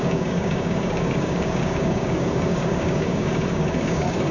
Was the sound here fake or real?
fake